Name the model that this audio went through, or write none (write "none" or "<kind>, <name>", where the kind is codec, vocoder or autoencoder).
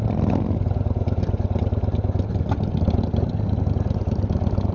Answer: none